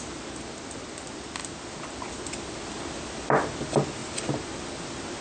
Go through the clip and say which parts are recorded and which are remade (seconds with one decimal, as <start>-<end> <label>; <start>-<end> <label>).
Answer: 0.0-5.2 recorded